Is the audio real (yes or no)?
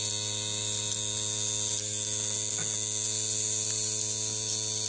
yes